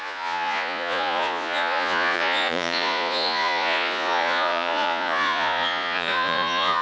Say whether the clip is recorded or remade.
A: remade